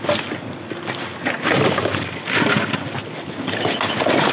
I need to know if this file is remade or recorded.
recorded